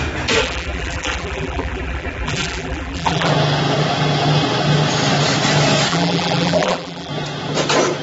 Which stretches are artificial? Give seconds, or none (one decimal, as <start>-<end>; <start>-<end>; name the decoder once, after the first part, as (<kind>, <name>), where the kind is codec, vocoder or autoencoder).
0.4-3.3 (vocoder, BigVGAN v2); 5.9-7.1